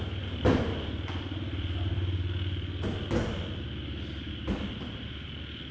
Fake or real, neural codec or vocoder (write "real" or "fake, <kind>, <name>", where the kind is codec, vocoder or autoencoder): real